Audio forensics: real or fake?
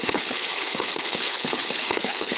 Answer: fake